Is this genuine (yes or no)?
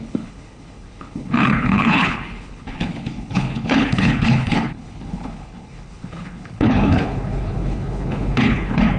no